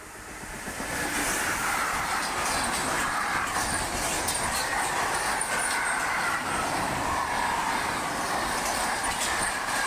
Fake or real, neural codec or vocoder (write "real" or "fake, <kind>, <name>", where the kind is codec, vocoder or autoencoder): real